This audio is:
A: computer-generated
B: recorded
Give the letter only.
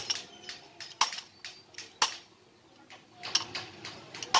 B